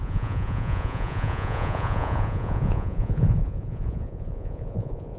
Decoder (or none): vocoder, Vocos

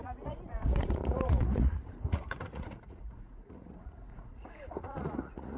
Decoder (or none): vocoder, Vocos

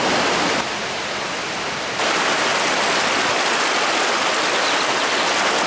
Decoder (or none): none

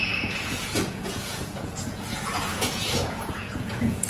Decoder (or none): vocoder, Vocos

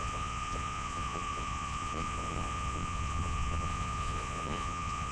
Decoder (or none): vocoder, Vocos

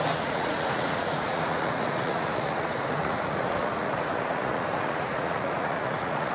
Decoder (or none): vocoder, Vocos